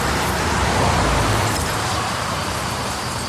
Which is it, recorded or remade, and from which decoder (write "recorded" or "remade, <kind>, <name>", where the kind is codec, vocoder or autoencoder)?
remade, vocoder, BigVGAN v2